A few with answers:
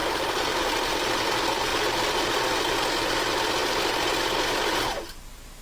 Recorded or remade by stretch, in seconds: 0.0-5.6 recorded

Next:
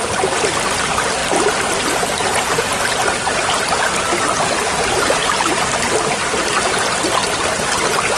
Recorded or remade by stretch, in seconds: 0.0-1.2 remade; 1.2-6.1 recorded; 6.1-8.2 remade

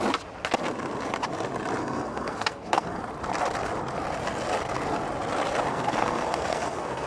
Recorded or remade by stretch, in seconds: 0.0-1.8 recorded; 1.8-3.0 remade; 3.0-5.7 recorded; 5.7-7.1 remade

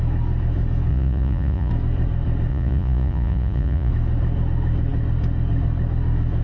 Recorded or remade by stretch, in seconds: 0.0-0.9 recorded; 0.9-1.7 remade; 1.7-2.5 recorded; 2.5-3.9 remade; 3.9-6.4 recorded

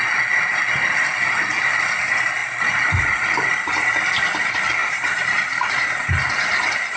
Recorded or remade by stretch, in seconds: 0.0-4.8 recorded; 4.8-5.8 remade; 5.8-7.0 recorded

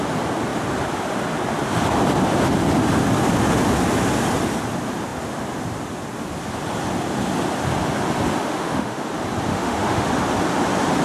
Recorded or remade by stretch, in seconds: 0.0-8.4 recorded; 8.4-9.0 remade; 9.0-9.5 recorded; 9.5-10.1 remade; 10.1-11.0 recorded